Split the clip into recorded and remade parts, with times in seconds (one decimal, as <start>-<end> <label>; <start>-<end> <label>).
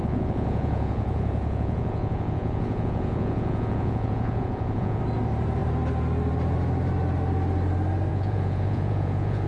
0.0-5.0 remade; 5.0-8.1 recorded; 8.1-9.5 remade